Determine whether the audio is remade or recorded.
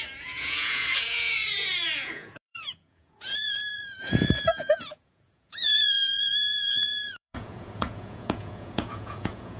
remade